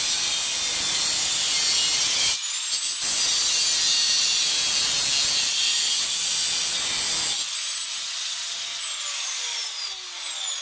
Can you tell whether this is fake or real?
real